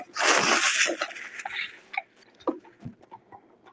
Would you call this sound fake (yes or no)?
no